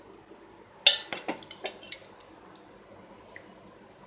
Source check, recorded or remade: recorded